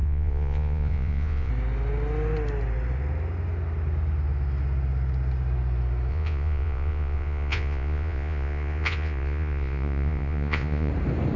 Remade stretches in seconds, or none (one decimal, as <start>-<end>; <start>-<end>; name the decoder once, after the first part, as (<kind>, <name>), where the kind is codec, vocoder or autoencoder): 0.0-1.5 (vocoder, Vocos); 6.1-10.9

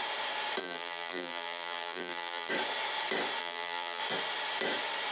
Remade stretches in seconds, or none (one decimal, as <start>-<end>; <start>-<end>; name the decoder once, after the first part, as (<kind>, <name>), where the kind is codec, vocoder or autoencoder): 0.6-2.5 (vocoder, BigVGAN v2); 3.4-4.0

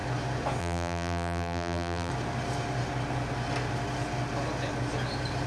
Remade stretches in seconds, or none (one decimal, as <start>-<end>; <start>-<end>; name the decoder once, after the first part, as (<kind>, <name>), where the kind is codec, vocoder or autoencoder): 0.6-2.1 (vocoder, BigVGAN v2)

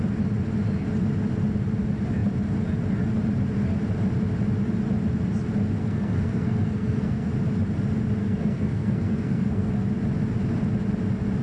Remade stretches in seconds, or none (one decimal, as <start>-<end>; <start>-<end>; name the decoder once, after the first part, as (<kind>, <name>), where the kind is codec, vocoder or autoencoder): 5.8-7.3 (codec, SNAC); 8.2-9.7

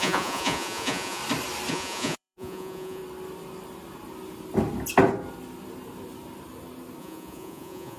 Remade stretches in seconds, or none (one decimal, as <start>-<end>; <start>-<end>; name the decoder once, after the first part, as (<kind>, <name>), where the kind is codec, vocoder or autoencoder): 0.0-1.2 (vocoder, Vocos); 1.7-3.0; 7.0-8.0

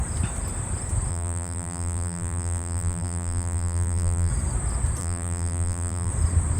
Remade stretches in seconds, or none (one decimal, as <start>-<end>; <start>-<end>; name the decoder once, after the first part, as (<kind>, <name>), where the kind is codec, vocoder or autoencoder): 1.1-4.3 (vocoder, BigVGAN v2); 5.0-6.1

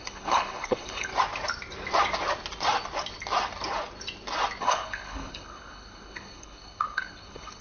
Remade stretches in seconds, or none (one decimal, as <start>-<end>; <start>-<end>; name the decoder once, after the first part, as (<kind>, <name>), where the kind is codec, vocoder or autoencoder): 0.0-1.1 (codec, HILCodec); 4.6-7.6

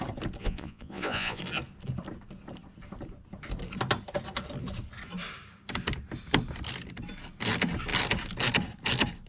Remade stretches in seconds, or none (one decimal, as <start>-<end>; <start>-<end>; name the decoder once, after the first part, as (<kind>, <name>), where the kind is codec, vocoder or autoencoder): 0.4-1.4 (vocoder, Vocos)